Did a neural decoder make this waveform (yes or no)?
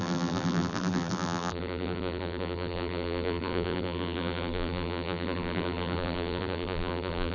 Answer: yes